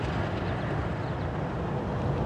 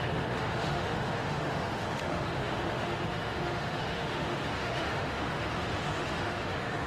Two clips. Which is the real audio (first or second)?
first